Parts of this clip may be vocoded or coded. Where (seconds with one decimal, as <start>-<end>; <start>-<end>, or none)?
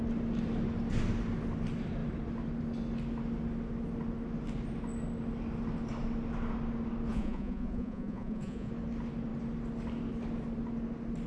7.1-8.7